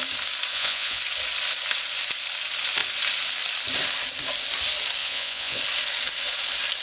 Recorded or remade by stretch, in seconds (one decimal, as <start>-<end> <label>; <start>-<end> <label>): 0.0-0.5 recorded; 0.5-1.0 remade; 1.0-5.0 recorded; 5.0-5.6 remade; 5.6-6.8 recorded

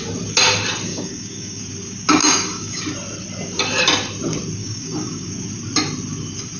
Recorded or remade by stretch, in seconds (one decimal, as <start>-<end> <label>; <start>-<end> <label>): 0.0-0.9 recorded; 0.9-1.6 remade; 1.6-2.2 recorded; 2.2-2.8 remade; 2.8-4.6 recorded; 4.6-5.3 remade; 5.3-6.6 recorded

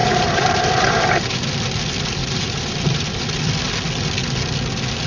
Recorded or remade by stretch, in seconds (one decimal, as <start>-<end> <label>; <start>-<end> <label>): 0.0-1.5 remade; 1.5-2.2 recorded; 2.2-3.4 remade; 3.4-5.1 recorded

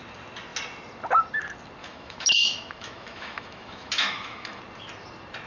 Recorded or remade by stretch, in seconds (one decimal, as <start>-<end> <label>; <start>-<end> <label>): 0.0-1.8 recorded; 1.8-4.6 remade; 4.6-5.5 recorded

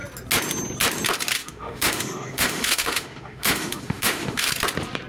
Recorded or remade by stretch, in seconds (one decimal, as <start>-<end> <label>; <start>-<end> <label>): 0.0-1.4 recorded; 1.4-4.5 remade; 4.5-5.1 recorded

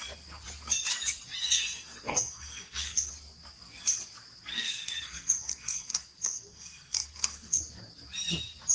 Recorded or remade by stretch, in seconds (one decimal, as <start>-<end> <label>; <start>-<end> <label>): 0.0-1.4 recorded; 1.4-3.1 remade; 3.1-4.5 recorded; 4.5-7.6 remade; 7.6-8.7 recorded

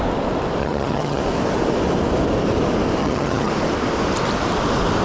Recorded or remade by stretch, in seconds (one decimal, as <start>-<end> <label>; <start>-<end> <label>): 0.0-0.6 recorded; 0.6-1.2 remade; 1.2-3.0 recorded; 3.0-3.5 remade; 3.5-5.0 recorded